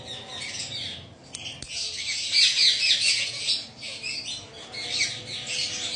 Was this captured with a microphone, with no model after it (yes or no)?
yes